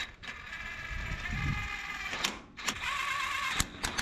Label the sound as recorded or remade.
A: recorded